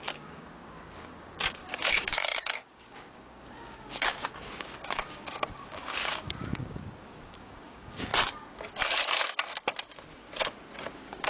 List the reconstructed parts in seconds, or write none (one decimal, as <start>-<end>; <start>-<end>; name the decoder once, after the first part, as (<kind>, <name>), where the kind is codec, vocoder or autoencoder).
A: 0.0-8.1 (codec, DAC); 10.9-11.3